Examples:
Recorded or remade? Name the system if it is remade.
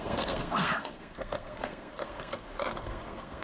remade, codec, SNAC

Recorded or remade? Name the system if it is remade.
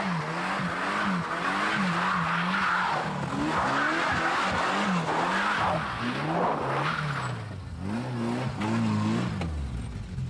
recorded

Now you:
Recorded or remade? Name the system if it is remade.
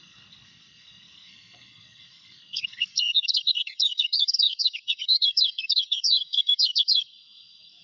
remade, codec, SNAC